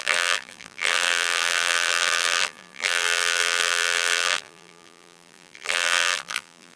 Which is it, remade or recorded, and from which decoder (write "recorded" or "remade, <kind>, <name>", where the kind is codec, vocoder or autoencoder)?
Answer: remade, vocoder, BigVGAN v2